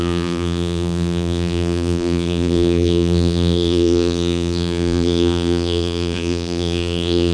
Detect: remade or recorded remade